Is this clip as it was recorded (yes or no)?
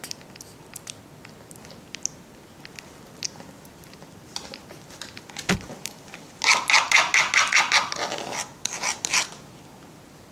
yes